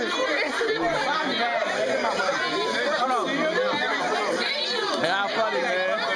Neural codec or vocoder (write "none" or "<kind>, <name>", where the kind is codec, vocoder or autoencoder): none